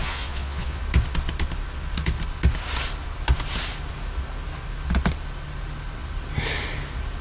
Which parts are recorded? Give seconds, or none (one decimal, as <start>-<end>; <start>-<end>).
0.8-7.2